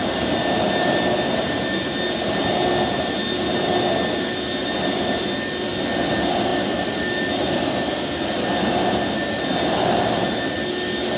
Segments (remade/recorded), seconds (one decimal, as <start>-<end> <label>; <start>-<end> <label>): 0.0-11.2 recorded